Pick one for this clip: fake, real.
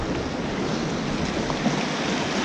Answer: real